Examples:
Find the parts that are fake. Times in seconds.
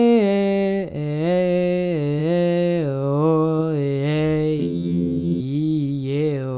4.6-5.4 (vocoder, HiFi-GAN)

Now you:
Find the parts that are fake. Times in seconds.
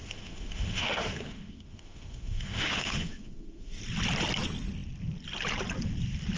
0.0-3.8 (autoencoder, DAC-VAE)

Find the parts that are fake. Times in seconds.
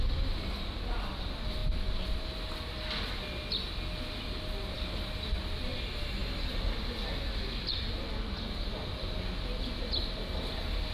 none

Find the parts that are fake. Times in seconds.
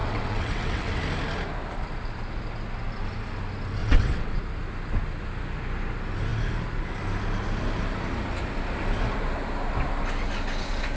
0.0-1.0 (vocoder, WaveNeXt); 3.8-4.4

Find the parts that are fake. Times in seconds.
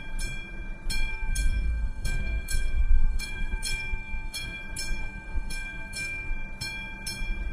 1.1-4.6 (codec, SNAC); 5.0-6.3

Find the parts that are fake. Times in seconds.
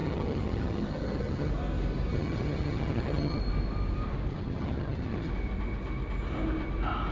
0.0-1.5 (vocoder, HiFi-GAN); 2.1-3.4; 4.3-5.3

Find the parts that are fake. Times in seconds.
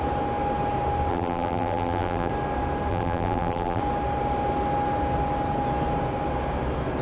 1.1-2.3 (vocoder, BigVGAN v2); 2.9-3.8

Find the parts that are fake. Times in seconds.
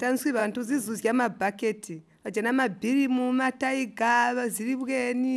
none